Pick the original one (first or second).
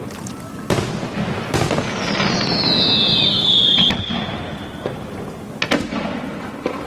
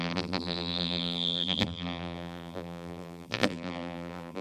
first